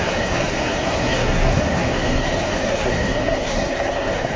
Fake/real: fake